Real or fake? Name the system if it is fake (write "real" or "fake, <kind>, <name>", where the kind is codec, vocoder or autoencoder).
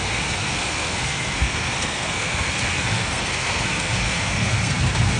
fake, codec, SNAC